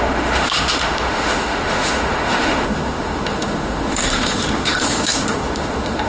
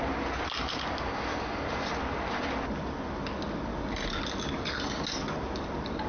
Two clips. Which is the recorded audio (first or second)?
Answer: second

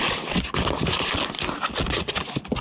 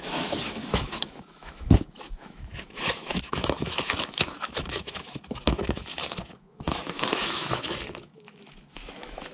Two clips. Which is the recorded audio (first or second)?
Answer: first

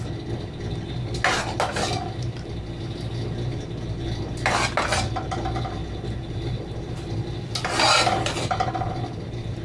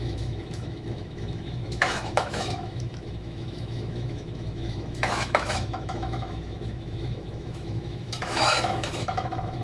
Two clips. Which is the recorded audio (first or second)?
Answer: first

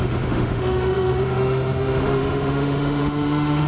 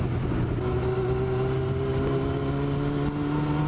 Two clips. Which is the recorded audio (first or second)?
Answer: second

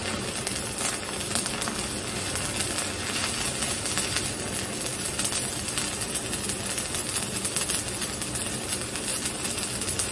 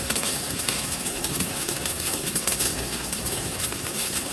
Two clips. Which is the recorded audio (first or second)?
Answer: first